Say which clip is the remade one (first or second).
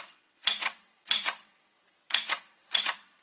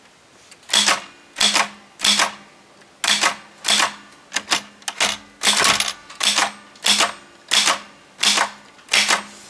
first